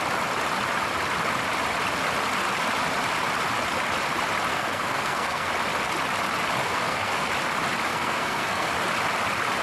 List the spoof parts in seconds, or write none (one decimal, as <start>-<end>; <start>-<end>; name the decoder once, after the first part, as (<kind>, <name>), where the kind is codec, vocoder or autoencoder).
4.5-5.5 (codec, SNAC); 6.6-7.3; 7.9-8.7